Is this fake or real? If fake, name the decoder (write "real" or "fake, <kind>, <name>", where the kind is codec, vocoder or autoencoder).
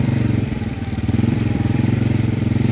fake, vocoder, BigVGAN v2